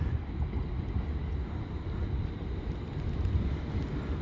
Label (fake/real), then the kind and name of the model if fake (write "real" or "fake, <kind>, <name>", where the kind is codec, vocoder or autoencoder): real